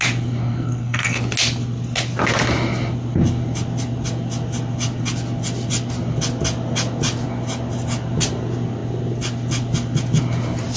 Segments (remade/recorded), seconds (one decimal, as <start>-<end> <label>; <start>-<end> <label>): 0.0-0.4 recorded; 0.4-1.2 remade; 1.2-10.8 recorded